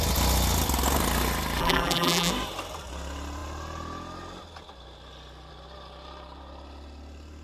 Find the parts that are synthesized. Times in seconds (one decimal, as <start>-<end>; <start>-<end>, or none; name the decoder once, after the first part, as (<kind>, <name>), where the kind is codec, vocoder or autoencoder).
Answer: 1.6-2.3 (vocoder, BigVGAN v2)